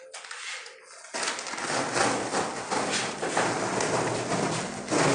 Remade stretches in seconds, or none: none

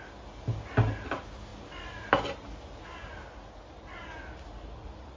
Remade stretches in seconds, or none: none

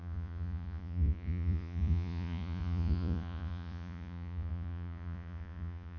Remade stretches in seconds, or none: 0.0-6.0 (vocoder, Vocos)

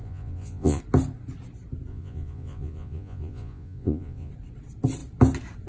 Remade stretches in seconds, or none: 0.0-0.8 (vocoder, Vocos); 1.9-4.3

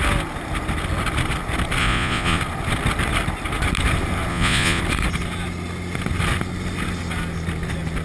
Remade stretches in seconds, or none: 1.8-2.4 (vocoder, Vocos); 4.3-4.8